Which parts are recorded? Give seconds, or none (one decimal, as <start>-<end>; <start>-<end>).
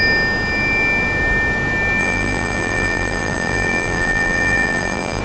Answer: 0.0-2.0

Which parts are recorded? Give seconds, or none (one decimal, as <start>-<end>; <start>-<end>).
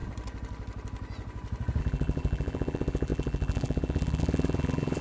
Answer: 0.0-1.8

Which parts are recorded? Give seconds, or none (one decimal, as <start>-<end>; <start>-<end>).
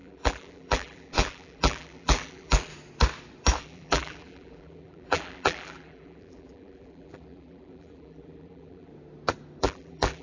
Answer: 2.7-3.6; 8.9-9.6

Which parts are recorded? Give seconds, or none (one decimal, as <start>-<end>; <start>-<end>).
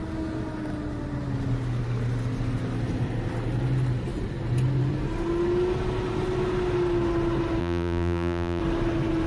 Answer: 0.0-7.6; 8.6-9.3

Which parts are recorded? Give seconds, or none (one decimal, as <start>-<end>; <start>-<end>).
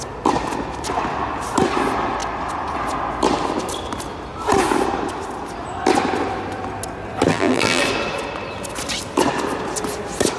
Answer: 0.0-7.3; 7.8-10.4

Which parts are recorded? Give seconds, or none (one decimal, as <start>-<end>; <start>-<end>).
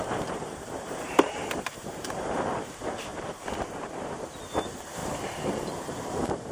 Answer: 3.1-3.8; 5.0-5.7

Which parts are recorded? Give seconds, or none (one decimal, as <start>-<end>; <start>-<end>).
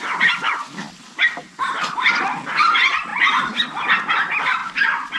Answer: 0.0-4.6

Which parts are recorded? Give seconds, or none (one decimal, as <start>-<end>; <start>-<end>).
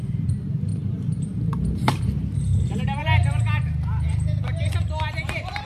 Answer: 0.0-0.7; 2.0-5.7